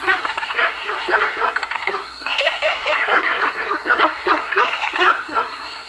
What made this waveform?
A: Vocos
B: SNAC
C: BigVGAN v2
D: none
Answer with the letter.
B